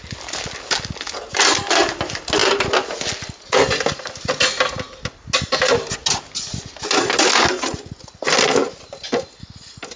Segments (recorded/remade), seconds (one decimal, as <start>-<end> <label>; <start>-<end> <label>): 0.0-10.0 recorded